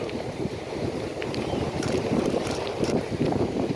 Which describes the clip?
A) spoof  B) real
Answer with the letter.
A